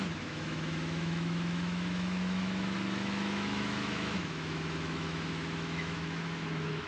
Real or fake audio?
fake